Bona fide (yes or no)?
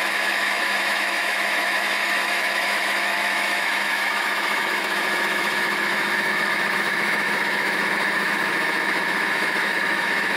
no